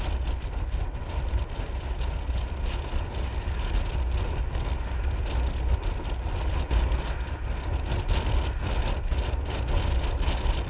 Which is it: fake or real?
real